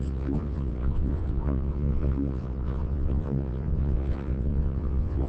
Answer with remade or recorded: remade